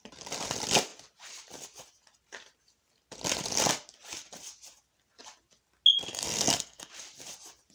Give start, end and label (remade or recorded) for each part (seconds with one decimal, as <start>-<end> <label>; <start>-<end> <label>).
0.0-6.1 recorded; 6.1-6.9 remade; 6.9-7.7 recorded